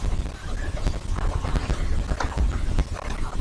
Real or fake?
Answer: real